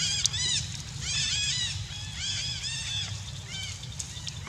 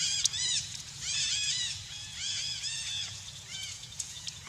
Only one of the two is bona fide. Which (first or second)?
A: first